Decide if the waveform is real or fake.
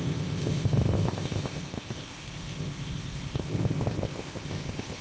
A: fake